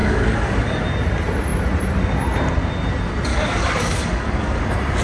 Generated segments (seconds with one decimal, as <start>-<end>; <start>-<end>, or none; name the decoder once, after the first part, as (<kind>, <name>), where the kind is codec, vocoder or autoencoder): 0.0-0.8 (codec, DAC); 3.3-4.6